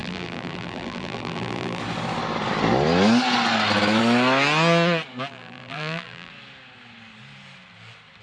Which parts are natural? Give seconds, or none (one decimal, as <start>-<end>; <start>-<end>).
1.8-5.3; 6.3-8.2

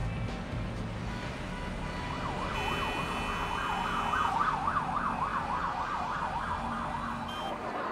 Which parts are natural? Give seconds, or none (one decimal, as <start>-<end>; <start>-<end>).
0.0-7.9

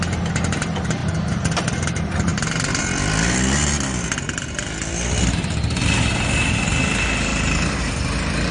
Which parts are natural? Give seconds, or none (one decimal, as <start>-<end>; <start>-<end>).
0.0-7.3; 7.9-8.5

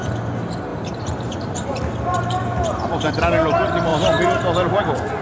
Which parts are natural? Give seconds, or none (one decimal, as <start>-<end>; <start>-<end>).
0.0-0.7; 3.1-5.2

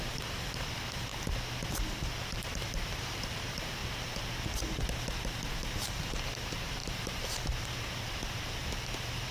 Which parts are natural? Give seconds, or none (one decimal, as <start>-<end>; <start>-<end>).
1.1-2.2; 3.8-5.5

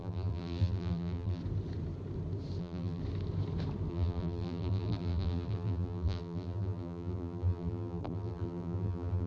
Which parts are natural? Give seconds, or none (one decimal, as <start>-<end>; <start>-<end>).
1.4-2.6; 3.0-3.9

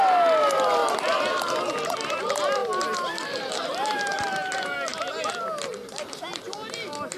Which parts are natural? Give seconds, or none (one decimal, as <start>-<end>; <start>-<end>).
0.0-2.6; 3.5-7.2

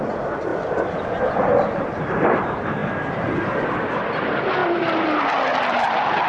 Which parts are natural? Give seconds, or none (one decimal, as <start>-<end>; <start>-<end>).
0.0-0.5; 1.2-2.8; 3.9-4.6; 5.2-6.3